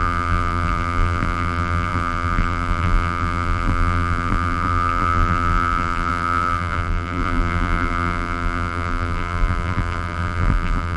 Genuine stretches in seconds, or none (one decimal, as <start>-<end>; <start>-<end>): none